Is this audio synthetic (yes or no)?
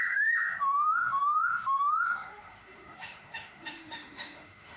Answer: yes